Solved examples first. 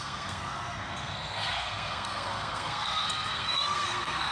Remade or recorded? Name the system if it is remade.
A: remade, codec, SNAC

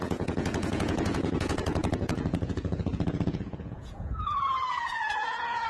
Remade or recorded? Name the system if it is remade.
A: remade, vocoder, Vocos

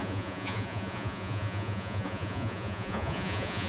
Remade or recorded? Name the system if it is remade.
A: remade, vocoder, Vocos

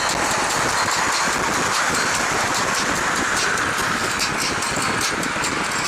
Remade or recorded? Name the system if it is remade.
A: recorded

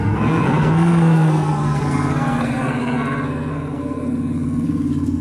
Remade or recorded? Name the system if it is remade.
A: remade, codec, SNAC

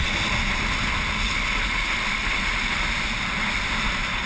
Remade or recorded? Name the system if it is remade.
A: recorded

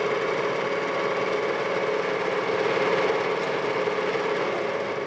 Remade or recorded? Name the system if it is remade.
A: recorded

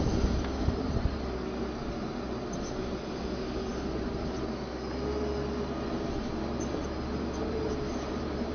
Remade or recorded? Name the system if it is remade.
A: recorded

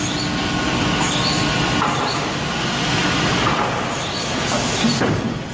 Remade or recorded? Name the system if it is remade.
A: recorded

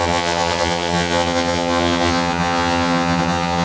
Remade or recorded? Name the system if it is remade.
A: remade, vocoder, HiFi-GAN